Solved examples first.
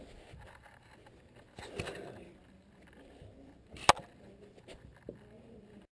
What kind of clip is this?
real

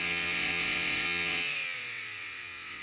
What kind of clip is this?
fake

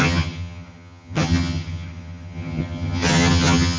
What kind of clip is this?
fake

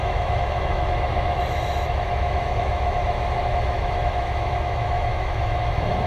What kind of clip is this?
fake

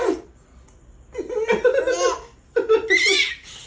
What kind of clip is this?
real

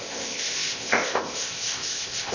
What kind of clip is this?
fake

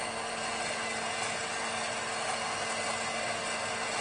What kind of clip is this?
real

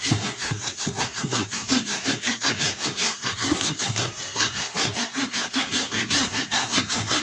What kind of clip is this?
fake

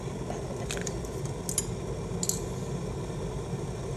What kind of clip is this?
real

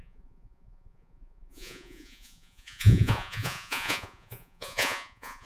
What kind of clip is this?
fake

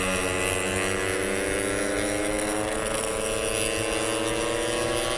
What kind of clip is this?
real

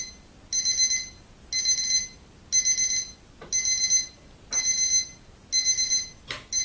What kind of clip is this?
real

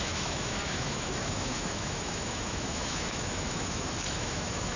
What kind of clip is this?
fake